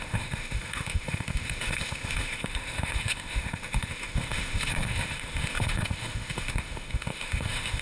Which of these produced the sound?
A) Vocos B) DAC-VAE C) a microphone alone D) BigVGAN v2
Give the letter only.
B